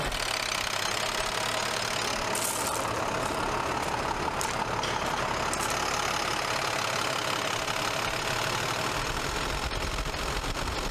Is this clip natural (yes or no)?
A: yes